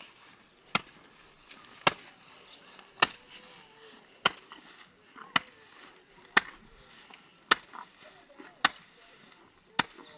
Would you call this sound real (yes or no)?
yes